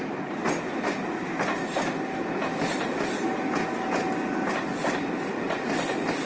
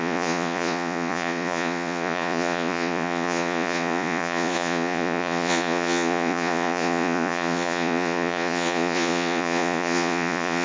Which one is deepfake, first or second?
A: second